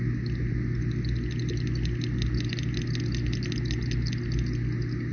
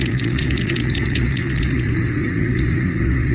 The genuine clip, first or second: first